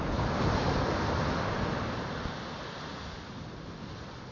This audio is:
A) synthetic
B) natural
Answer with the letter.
B